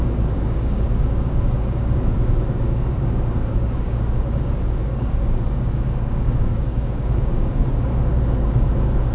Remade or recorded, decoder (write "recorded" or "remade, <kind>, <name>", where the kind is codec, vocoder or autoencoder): remade, codec, DAC